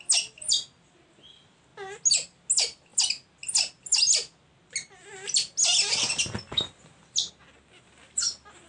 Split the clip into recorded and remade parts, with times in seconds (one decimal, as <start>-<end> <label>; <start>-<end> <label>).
0.0-8.7 recorded